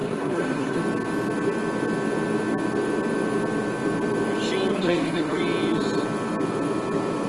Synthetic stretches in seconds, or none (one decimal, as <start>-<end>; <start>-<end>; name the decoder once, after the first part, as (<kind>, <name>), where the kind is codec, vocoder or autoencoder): 0.0-0.8 (codec, SNAC); 4.7-5.4